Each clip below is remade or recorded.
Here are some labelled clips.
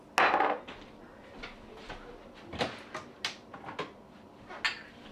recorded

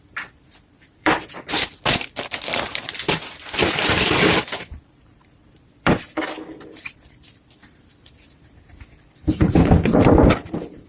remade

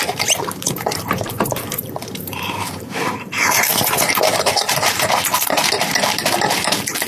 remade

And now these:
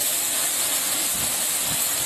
recorded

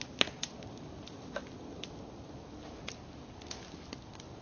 recorded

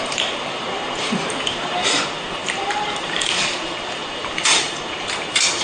remade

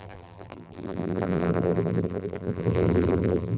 remade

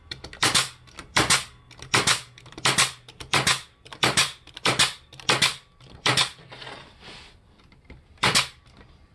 remade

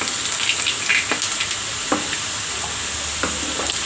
recorded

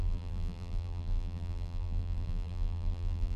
remade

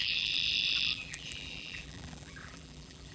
remade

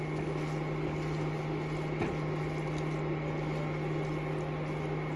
recorded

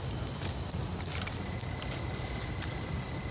recorded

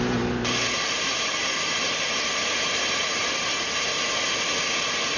remade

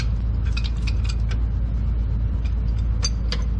recorded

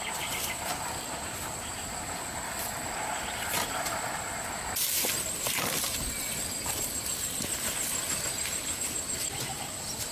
recorded